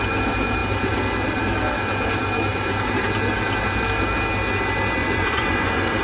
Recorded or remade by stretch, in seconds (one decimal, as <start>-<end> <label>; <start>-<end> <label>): 0.0-5.0 recorded; 5.0-6.0 remade